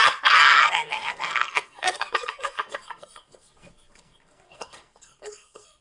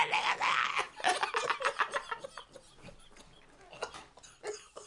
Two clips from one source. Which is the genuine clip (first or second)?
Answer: second